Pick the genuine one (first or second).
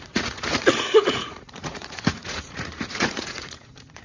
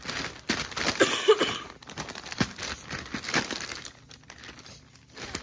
second